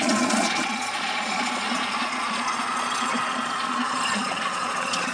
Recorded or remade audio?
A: remade